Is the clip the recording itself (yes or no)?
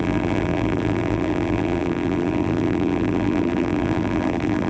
no